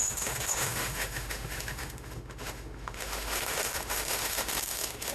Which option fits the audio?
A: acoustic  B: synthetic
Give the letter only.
B